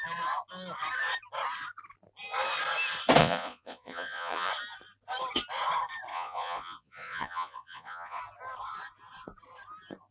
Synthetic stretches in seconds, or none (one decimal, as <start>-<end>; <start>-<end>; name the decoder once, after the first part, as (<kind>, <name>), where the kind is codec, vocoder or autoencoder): 3.2-4.5 (vocoder, Vocos); 6.1-8.2